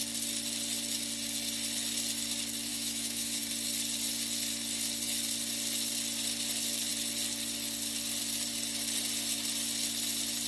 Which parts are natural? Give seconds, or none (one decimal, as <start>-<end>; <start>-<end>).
0.0-2.7; 3.4-10.5